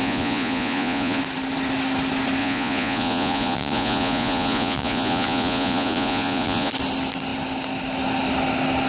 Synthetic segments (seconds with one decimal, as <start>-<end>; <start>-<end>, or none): 0.0-1.2; 2.4-6.7